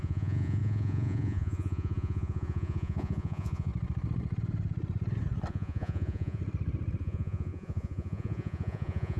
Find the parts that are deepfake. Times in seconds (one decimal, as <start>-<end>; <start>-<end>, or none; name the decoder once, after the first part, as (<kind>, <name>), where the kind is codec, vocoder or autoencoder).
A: 0.0-3.7 (vocoder, Vocos); 5.5-6.4; 7.0-9.2